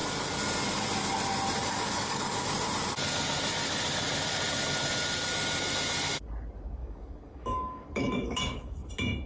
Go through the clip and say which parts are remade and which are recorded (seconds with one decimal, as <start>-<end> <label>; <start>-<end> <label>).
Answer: 0.0-1.6 recorded; 1.6-2.5 remade; 2.5-6.8 recorded; 6.8-8.9 remade; 8.9-9.3 recorded